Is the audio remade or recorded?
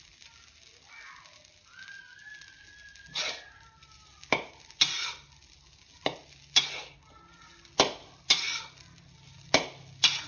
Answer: recorded